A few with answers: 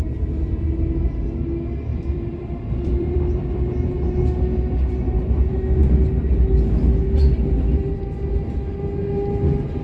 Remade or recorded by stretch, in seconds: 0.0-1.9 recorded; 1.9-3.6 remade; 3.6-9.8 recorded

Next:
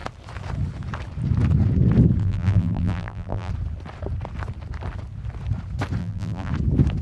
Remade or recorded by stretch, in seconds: 0.0-2.2 recorded; 2.2-3.5 remade; 3.5-6.0 recorded; 6.0-6.5 remade; 6.5-7.0 recorded